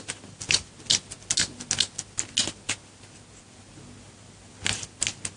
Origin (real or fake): real